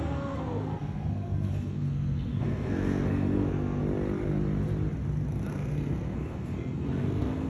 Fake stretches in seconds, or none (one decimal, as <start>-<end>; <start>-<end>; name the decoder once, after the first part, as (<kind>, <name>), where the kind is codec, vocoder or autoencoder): 0.0-3.8 (codec, SNAC); 5.5-7.5